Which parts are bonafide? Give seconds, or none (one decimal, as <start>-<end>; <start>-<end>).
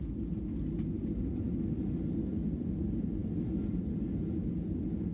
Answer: 0.0-5.1